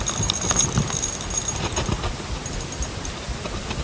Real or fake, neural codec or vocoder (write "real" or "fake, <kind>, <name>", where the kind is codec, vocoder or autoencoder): real